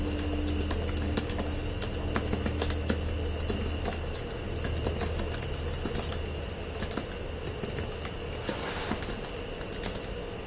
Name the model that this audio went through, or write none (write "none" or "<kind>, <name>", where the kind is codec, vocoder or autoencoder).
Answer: none